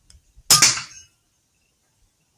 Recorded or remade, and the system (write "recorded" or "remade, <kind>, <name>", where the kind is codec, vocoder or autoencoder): recorded